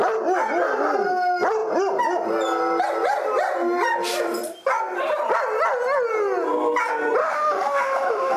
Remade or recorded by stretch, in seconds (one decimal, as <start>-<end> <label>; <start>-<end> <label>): 0.0-7.2 recorded; 7.2-8.4 remade